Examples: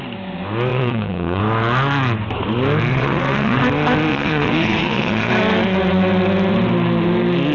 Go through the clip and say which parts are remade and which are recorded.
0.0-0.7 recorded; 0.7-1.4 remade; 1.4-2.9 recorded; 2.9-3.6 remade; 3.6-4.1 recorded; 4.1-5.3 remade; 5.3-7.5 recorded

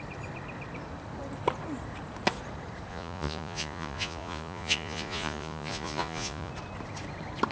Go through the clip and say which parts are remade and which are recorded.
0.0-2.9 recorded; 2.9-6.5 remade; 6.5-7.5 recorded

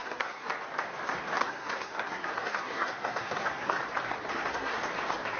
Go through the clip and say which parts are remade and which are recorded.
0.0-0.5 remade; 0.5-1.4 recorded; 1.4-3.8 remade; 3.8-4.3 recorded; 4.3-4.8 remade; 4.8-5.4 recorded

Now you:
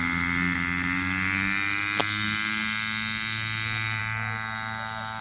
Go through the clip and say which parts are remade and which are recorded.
0.0-5.2 recorded